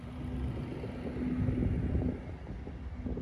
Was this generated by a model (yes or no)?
no